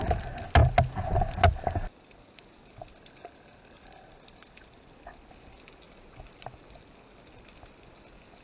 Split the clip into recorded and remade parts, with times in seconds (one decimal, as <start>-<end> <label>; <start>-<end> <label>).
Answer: 0.0-8.4 recorded